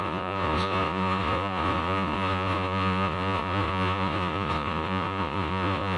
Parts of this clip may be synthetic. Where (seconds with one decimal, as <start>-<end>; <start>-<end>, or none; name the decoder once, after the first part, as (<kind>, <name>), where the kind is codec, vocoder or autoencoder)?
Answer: 0.0-6.0 (vocoder, Vocos)